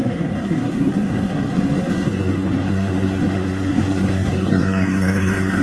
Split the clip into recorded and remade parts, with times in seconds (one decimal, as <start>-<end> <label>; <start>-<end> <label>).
0.0-5.6 remade

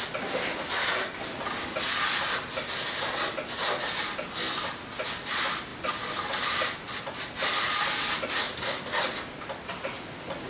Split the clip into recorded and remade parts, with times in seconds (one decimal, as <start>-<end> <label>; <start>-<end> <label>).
0.0-10.5 recorded

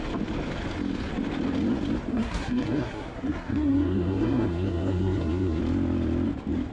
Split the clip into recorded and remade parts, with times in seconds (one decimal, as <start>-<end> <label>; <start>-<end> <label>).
0.0-2.1 recorded; 2.1-5.6 remade; 5.6-6.7 recorded

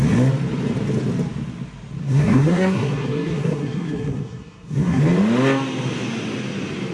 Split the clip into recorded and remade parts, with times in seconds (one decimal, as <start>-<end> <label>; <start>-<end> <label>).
0.0-2.0 recorded; 2.0-5.0 remade; 5.0-6.9 recorded